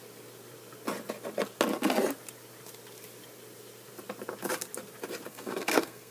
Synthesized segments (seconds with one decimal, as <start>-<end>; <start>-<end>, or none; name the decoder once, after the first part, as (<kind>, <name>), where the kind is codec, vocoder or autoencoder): 5.3-6.1 (codec, SNAC)